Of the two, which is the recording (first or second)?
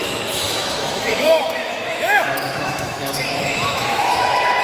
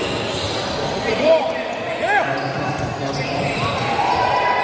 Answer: second